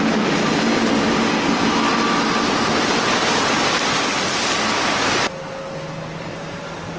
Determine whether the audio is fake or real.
real